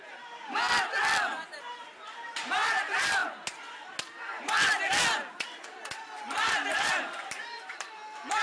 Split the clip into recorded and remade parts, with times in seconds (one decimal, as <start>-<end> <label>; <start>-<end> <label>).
0.0-0.7 remade; 0.7-1.6 recorded; 1.6-3.2 remade; 3.2-5.6 recorded; 5.6-8.4 remade